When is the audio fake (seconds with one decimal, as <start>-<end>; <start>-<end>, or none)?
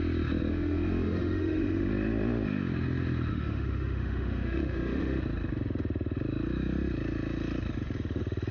0.5-1.9; 3.3-5.2